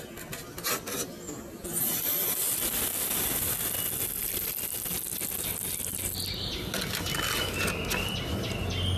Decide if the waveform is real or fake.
real